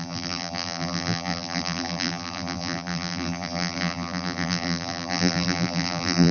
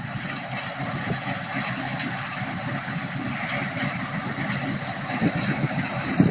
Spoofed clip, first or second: first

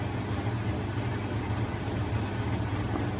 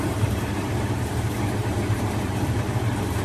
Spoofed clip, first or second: second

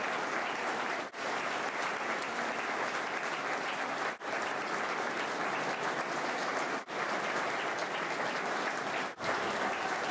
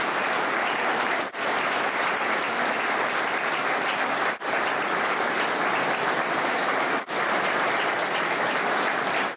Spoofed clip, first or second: second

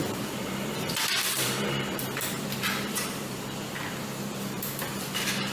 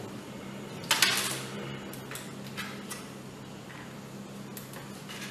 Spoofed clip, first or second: first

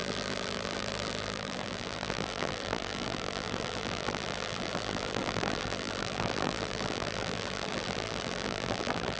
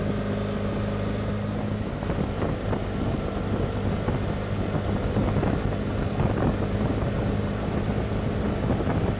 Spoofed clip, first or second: first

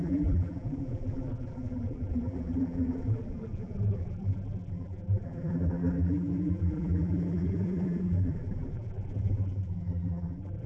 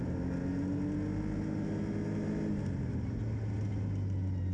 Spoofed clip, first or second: first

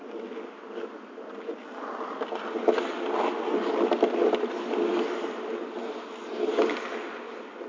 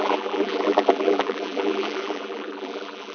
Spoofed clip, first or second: second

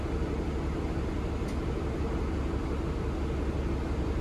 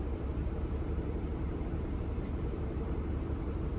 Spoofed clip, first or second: second